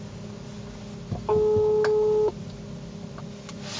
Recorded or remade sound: recorded